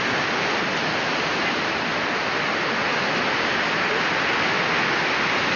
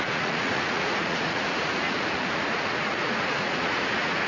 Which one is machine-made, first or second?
second